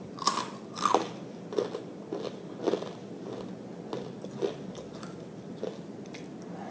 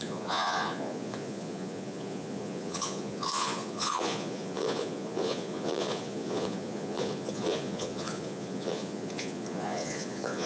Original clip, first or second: first